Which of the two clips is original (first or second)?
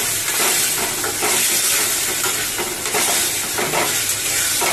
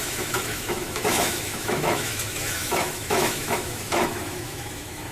first